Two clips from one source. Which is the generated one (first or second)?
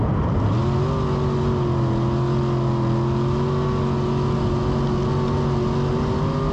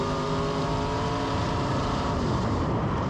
second